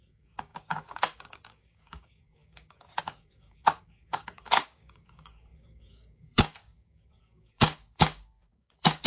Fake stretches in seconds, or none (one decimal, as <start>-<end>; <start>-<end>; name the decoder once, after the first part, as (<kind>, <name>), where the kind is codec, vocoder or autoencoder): 0.0-9.1 (codec, DAC)